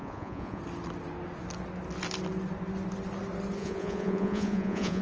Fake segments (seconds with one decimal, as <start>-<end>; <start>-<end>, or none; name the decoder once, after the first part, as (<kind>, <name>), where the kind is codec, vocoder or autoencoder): 0.0-0.6 (vocoder, Vocos); 3.6-5.0